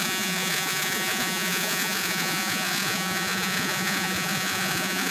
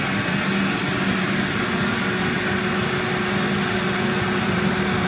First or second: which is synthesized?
first